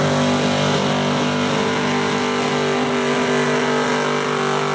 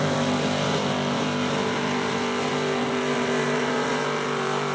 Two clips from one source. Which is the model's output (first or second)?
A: second